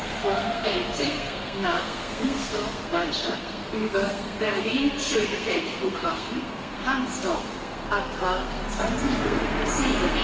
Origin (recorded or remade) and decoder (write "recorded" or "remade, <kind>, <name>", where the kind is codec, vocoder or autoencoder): remade, codec, SNAC